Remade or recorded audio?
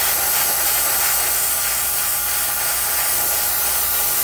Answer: recorded